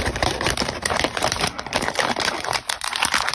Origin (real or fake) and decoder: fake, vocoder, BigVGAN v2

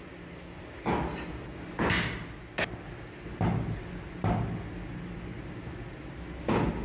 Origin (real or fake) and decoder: real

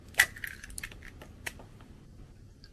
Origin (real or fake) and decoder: real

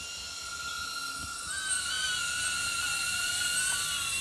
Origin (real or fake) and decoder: real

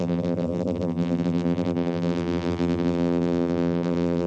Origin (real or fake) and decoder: fake, vocoder, BigVGAN v2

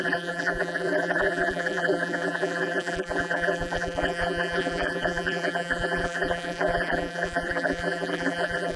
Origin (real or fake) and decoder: fake, vocoder, BigVGAN v2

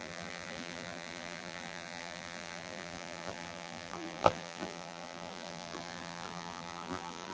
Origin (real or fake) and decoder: fake, vocoder, BigVGAN v2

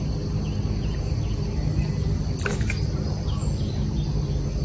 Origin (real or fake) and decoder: real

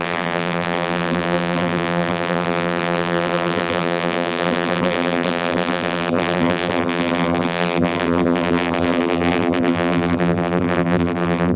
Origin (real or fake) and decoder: fake, vocoder, BigVGAN v2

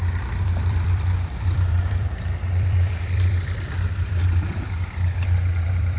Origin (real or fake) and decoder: fake, vocoder, BigVGAN v2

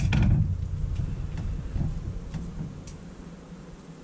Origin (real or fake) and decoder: real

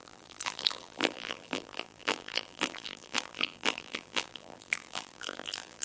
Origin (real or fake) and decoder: fake, vocoder, BigVGAN v2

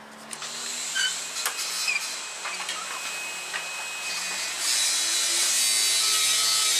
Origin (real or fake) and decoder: real